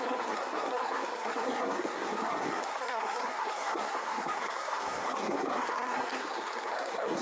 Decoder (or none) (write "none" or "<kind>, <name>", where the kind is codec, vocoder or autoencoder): codec, SNAC